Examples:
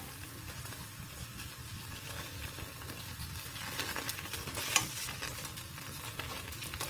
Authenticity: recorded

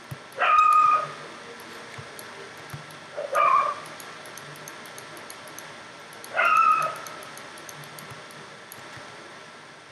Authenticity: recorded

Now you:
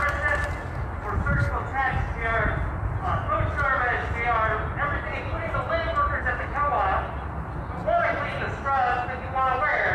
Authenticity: recorded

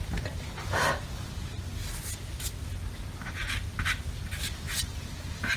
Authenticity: recorded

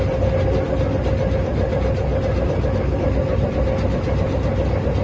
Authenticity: recorded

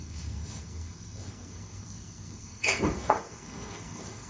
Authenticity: remade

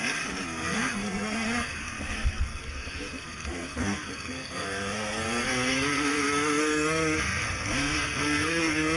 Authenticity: remade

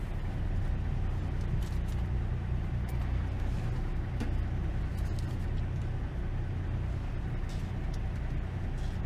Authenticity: recorded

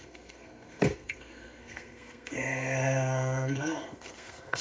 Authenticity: remade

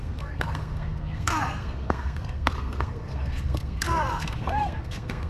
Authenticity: remade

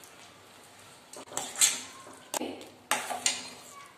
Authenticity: recorded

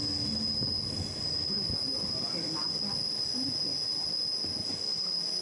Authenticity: recorded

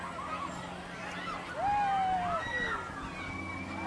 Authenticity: recorded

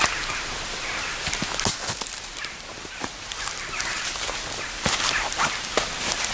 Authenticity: recorded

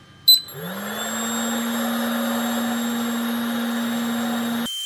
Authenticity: recorded